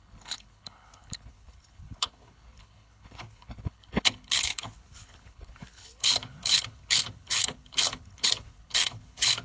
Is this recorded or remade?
remade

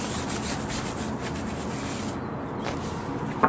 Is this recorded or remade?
recorded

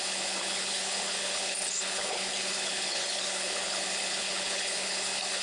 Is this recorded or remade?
remade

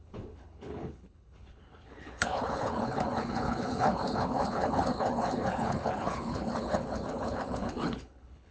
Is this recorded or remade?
remade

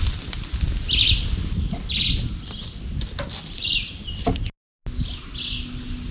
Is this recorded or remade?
recorded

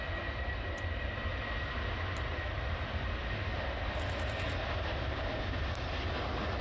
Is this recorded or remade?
recorded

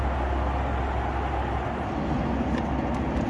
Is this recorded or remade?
recorded